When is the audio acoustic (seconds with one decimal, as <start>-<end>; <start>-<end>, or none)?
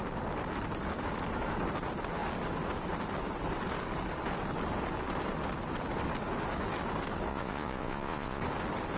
0.0-7.3; 8.4-9.0